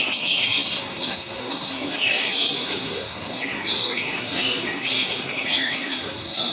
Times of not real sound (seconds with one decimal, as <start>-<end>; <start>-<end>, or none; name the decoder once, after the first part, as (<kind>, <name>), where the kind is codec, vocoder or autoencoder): 0.0-6.5 (codec, SNAC)